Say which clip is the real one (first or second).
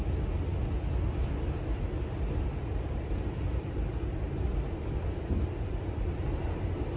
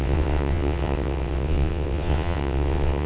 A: first